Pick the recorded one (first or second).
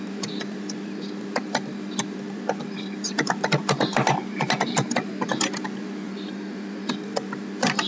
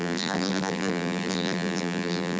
first